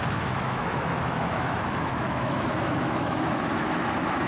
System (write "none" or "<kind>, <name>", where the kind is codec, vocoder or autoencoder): autoencoder, DAC-VAE